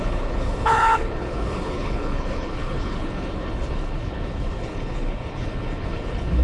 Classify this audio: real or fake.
fake